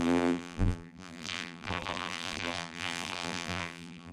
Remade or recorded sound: remade